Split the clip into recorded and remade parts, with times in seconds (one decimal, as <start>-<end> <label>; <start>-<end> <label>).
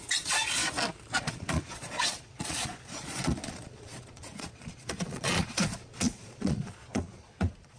0.0-0.6 remade; 0.6-1.2 recorded; 1.2-7.8 remade